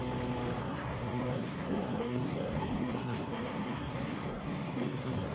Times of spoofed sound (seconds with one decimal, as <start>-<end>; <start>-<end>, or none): 0.6-5.3